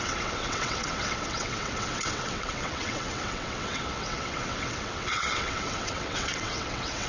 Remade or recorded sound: remade